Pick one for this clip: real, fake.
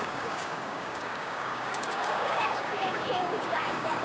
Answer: fake